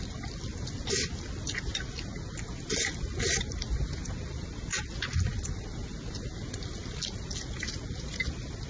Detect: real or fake real